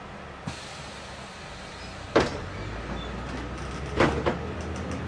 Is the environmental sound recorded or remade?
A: recorded